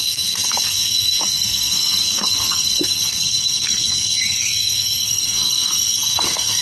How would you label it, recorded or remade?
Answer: remade